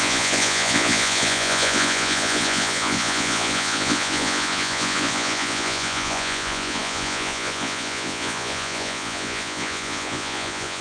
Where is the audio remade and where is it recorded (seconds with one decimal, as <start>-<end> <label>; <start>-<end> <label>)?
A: 0.0-10.8 remade